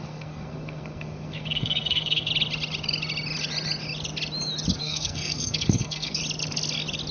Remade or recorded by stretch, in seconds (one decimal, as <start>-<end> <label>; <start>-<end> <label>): 0.0-2.3 remade; 2.3-4.8 recorded; 4.8-6.2 remade; 6.2-7.1 recorded